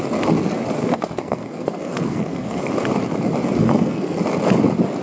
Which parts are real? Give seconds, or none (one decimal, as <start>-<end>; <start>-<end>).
0.0-0.8; 2.7-3.6; 4.2-5.0